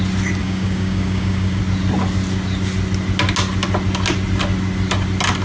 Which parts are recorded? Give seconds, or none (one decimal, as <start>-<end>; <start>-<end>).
0.0-0.4; 1.6-5.4